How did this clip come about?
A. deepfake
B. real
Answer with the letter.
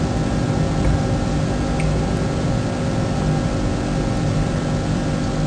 B